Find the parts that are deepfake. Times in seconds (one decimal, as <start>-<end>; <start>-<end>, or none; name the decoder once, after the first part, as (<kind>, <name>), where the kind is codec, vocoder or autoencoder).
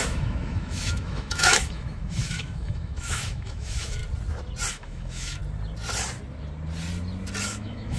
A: 0.0-4.0 (autoencoder, DAC-VAE); 4.7-5.4; 7.4-8.0